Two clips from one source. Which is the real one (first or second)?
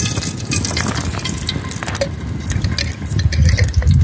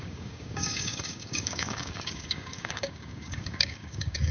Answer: first